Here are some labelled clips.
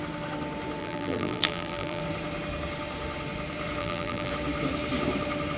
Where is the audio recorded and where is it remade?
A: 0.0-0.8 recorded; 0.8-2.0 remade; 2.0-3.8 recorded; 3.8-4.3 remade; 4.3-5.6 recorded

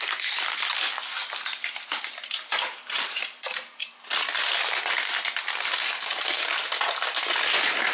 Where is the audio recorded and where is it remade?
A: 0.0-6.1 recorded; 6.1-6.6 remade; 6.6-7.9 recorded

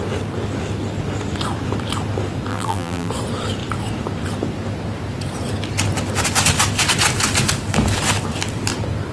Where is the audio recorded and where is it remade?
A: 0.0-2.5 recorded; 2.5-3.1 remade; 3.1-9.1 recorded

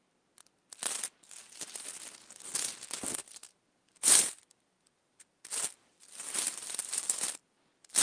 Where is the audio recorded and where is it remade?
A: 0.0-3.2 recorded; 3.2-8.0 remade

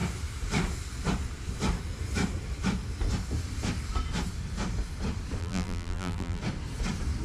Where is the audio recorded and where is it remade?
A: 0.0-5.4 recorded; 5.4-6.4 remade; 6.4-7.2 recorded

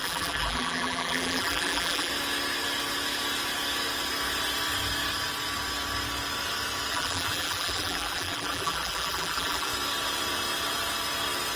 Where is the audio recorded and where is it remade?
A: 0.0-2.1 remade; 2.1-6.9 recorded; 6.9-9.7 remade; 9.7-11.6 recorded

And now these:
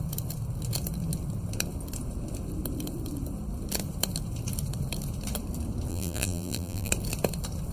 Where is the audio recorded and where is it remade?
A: 0.0-5.9 recorded; 5.9-6.9 remade; 6.9-7.7 recorded

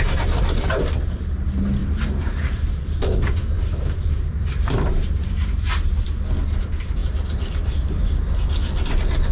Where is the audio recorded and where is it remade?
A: 0.0-1.8 recorded; 1.8-5.7 remade; 5.7-9.3 recorded